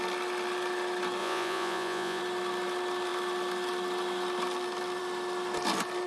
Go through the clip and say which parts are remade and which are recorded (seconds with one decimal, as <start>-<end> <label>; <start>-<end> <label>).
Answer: 0.0-1.2 recorded; 1.2-2.2 remade; 2.2-6.1 recorded